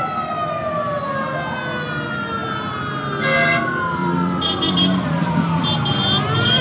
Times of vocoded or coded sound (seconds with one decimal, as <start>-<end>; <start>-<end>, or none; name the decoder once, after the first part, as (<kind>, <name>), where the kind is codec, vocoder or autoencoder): 4.0-6.6 (vocoder, BigVGAN v2)